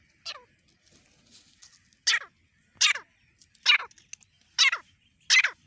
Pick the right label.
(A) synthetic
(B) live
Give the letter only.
B